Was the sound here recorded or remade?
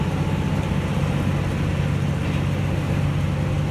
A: recorded